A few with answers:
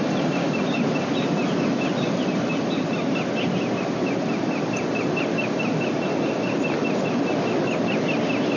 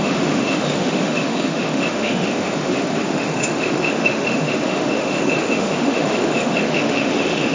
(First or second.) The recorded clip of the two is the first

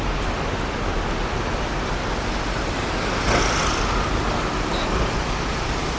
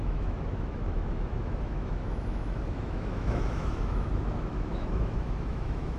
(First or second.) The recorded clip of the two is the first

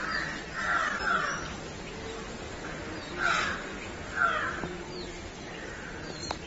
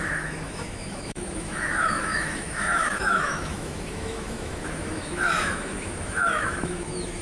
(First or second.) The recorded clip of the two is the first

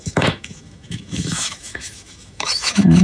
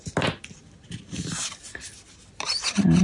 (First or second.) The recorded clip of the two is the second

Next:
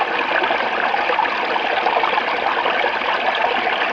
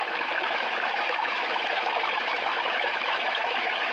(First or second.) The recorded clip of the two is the first